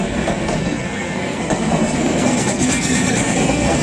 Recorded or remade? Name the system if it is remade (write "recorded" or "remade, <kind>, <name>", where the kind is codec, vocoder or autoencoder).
remade, codec, SNAC